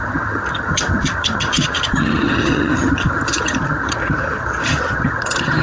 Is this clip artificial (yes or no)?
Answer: yes